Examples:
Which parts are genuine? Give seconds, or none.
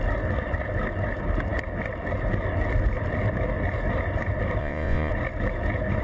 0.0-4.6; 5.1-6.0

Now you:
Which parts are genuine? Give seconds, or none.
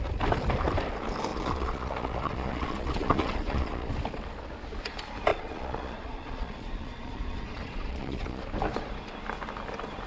0.0-1.3; 3.9-5.3; 8.4-10.1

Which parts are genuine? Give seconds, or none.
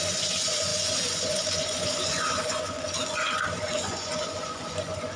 none